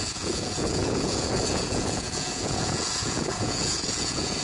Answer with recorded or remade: remade